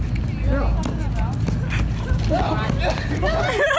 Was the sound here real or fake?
real